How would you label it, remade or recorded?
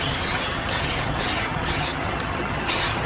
remade